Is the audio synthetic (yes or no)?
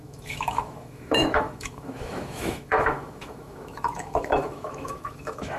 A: yes